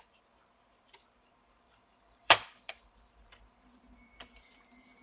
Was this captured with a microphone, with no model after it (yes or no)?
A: no